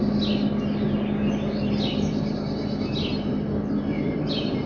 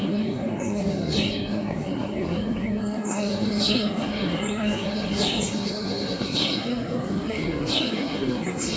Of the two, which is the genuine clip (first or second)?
first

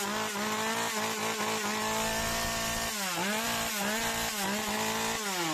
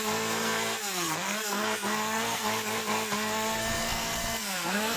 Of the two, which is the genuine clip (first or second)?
first